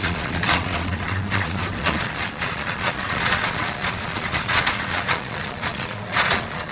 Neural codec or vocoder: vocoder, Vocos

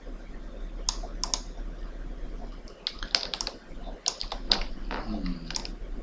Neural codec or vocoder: none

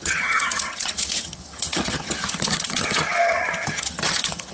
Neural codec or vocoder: vocoder, HiFi-GAN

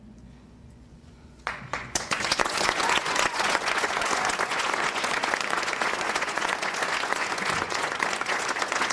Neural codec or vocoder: vocoder, Vocos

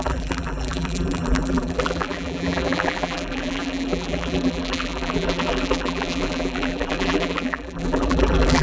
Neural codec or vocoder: vocoder, BigVGAN v2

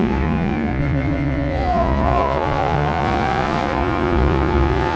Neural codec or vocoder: vocoder, Vocos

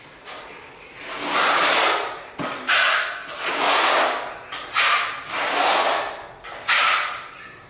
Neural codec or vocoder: none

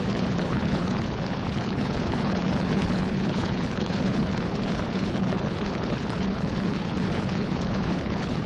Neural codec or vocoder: codec, HILCodec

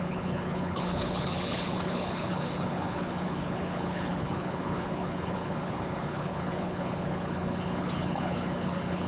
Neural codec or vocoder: codec, HILCodec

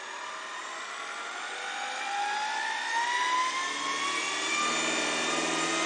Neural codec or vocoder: none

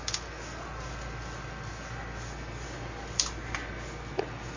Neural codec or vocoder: none